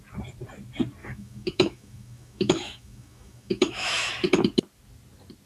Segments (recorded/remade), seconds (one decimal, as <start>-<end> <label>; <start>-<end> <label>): 0.0-1.0 recorded; 1.0-4.1 remade; 4.1-5.5 recorded